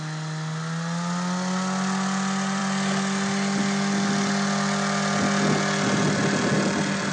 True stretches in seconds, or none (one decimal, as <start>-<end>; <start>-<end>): 0.0-7.1